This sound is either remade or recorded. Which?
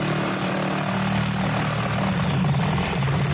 recorded